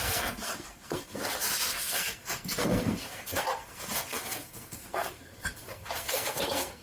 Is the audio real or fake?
fake